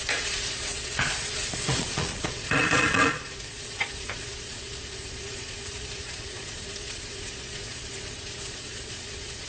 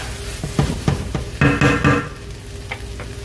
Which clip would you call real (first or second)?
second